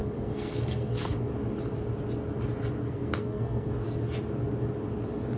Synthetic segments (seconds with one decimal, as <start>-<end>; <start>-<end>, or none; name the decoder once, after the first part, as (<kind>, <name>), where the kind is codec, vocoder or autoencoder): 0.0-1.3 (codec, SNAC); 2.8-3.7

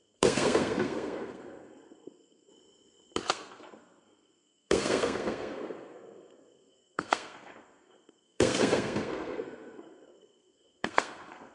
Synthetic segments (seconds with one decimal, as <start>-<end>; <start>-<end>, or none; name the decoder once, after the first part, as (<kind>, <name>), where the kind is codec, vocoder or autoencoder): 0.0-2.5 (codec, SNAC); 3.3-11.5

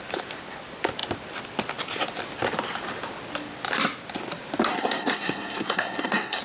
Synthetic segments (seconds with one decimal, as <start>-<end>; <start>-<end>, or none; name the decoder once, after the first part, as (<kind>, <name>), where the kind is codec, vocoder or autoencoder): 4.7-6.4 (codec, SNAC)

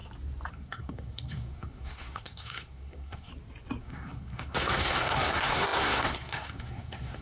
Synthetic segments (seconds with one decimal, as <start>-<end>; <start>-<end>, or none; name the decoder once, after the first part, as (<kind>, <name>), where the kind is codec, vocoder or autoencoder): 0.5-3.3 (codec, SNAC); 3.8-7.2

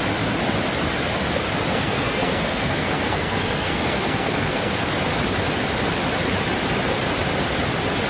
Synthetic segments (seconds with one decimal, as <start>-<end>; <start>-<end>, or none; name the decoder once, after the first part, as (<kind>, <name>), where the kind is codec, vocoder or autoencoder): 1.7-4.9 (codec, SNAC)